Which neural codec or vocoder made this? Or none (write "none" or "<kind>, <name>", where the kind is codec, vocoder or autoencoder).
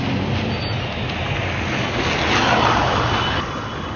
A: none